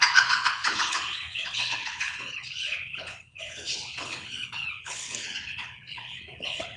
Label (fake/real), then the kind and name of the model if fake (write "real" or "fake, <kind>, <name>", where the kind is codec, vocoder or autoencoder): fake, codec, HILCodec